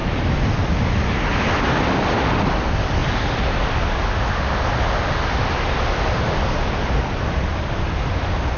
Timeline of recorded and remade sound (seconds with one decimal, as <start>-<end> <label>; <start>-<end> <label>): 0.0-1.4 recorded; 1.4-3.0 remade; 3.0-6.0 recorded; 6.0-8.6 remade

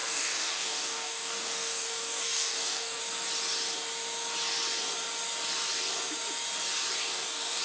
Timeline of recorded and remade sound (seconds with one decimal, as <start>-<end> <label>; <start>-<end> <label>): 0.0-3.0 remade; 3.0-7.0 recorded; 7.0-7.6 remade

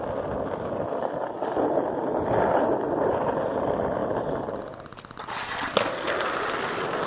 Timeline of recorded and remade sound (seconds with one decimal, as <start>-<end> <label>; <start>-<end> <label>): 0.0-7.1 recorded

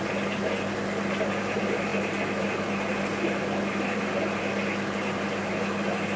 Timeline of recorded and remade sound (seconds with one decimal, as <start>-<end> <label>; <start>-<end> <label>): 0.0-6.2 recorded

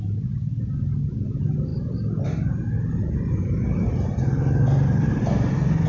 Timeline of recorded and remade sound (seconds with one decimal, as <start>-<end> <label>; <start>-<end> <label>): 0.0-5.9 recorded

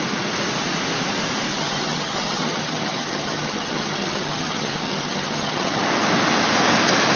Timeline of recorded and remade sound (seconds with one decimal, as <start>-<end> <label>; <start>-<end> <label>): 0.0-1.5 recorded; 1.5-5.8 remade; 5.8-7.2 recorded